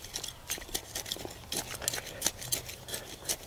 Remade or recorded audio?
recorded